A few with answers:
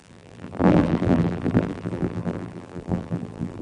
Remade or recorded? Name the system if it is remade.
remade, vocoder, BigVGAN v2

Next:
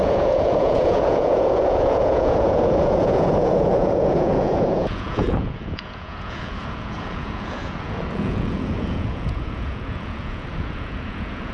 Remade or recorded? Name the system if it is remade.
remade, vocoder, Vocos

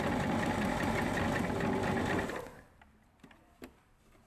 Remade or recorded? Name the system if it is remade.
recorded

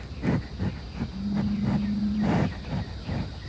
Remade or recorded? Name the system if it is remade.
recorded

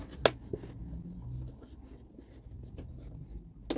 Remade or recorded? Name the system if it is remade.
recorded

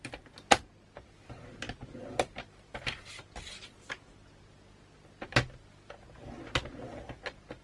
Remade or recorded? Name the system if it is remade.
recorded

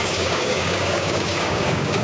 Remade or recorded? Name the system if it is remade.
remade, codec, DAC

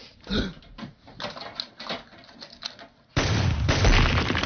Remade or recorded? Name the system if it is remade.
recorded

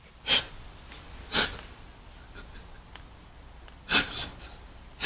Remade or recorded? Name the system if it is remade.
recorded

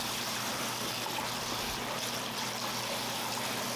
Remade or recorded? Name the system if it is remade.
recorded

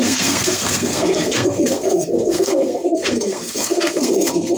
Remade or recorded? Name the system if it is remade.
remade, codec, SNAC